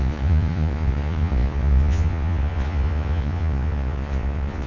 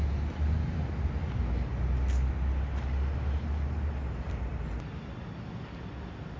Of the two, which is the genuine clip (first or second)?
second